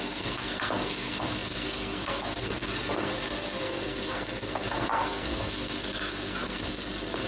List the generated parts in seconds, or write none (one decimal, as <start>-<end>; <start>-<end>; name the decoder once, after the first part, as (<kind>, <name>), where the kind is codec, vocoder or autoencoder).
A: 0.0-3.1 (codec, SNAC); 3.6-7.3